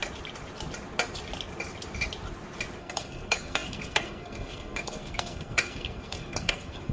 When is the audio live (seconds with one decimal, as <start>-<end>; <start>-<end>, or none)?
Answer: 0.0-2.8